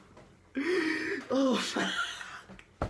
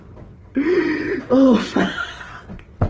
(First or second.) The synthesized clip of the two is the second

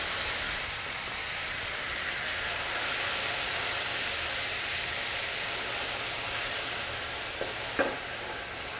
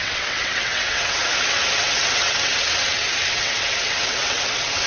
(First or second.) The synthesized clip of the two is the second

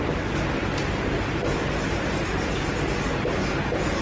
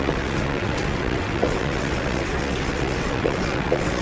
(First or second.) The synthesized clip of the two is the second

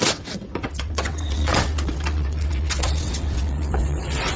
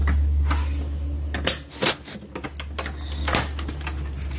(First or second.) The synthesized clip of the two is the first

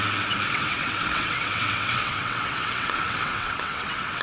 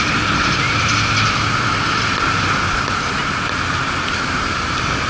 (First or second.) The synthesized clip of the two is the first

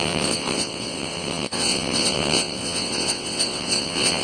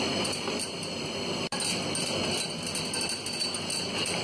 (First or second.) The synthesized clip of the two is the first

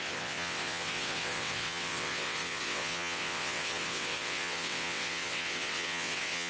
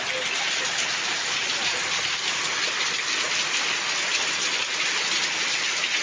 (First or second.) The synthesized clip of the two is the first